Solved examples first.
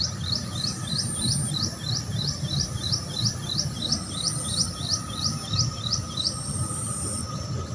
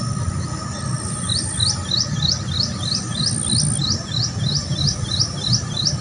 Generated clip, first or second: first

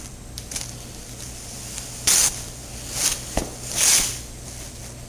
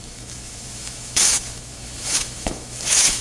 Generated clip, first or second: second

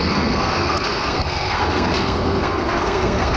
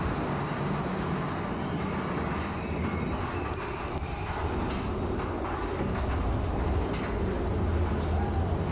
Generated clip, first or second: first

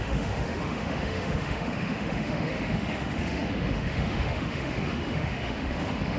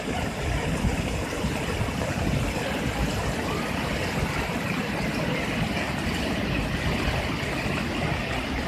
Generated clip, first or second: first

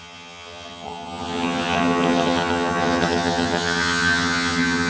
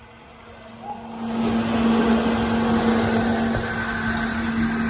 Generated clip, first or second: first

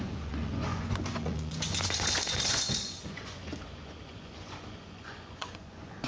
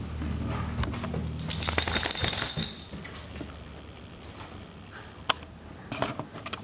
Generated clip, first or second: first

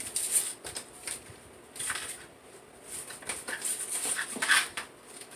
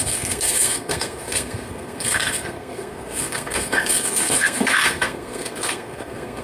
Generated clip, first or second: second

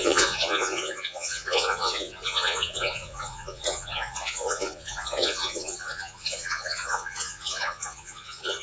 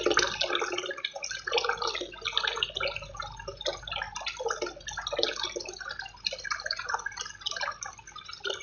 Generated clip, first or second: first